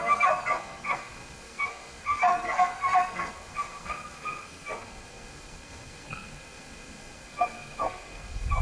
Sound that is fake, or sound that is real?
fake